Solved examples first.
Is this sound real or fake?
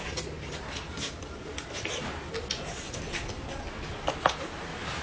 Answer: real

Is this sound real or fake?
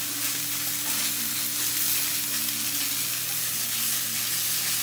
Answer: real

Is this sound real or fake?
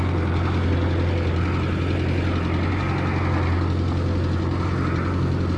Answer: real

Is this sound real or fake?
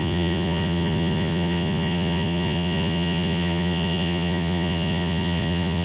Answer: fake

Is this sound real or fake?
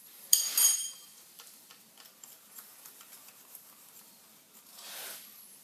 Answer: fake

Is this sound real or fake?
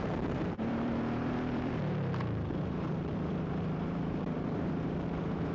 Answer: fake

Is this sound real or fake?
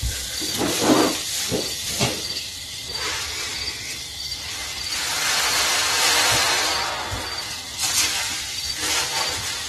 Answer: real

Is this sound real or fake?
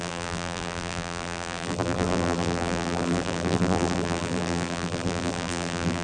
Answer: fake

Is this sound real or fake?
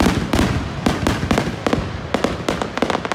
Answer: real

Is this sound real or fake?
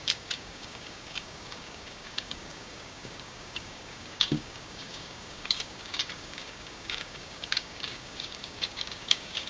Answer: fake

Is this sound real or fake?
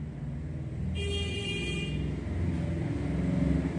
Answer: real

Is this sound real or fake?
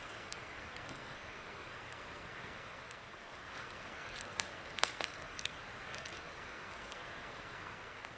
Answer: fake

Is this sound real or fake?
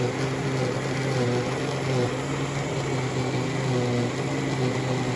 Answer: real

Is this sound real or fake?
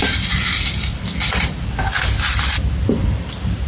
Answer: fake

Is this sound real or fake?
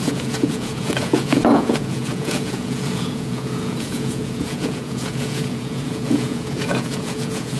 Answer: fake